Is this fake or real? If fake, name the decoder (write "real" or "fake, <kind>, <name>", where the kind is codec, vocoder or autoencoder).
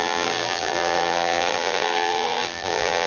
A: fake, vocoder, BigVGAN v2